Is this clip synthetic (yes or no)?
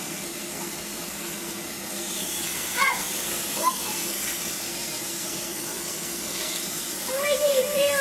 yes